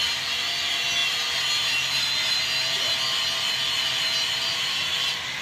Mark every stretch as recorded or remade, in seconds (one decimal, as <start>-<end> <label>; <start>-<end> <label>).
0.0-5.4 recorded